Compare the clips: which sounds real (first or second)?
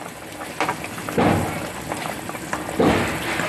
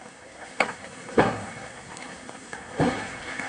first